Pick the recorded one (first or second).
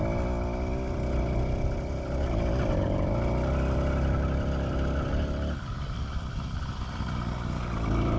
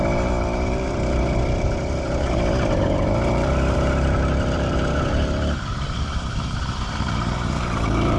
first